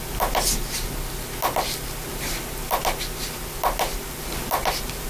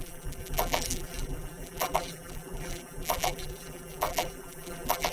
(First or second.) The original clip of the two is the first